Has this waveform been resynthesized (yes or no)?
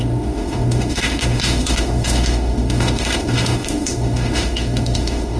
yes